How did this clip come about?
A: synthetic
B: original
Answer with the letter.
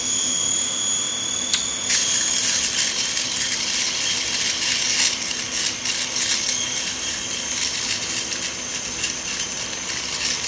B